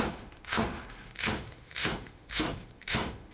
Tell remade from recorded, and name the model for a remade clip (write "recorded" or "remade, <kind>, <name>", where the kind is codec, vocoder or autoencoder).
remade, autoencoder, DAC-VAE